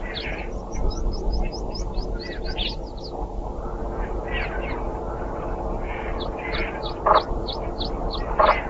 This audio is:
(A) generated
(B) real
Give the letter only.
B